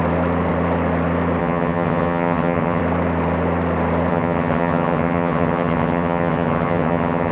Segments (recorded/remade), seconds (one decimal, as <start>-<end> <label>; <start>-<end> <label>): 0.0-1.4 recorded; 1.4-2.8 remade; 2.8-4.1 recorded; 4.1-7.3 remade